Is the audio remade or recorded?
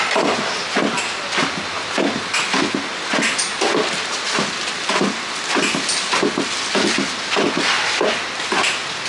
recorded